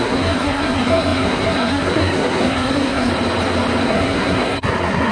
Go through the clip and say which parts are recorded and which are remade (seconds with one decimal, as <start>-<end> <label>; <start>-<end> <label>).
0.0-3.1 remade; 3.1-3.8 recorded; 3.8-5.1 remade